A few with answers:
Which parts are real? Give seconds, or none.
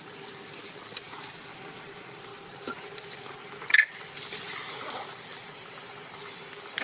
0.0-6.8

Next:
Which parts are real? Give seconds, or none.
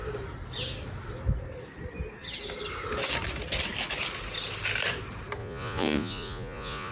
0.0-5.4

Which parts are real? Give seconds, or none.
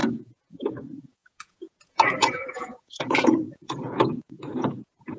none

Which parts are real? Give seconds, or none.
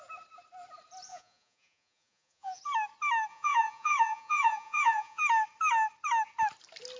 0.0-1.1; 2.6-3.3; 5.2-7.0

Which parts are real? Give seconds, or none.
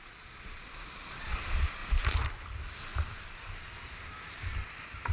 1.8-5.1